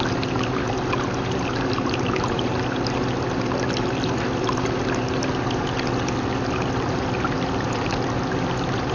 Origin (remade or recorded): recorded